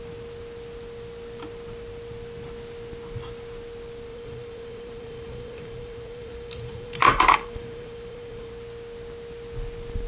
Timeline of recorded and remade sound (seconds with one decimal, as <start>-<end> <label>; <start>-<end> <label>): 0.0-4.1 recorded; 4.1-8.5 remade; 8.5-10.1 recorded